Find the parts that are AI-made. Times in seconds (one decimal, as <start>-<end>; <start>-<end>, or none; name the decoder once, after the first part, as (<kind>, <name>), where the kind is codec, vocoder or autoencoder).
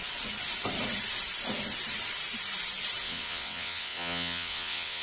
3.0-5.0 (vocoder, WaveNeXt)